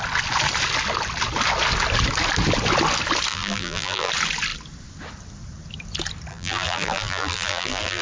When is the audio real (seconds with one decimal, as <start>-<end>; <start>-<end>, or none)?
0.0-3.3; 4.1-6.3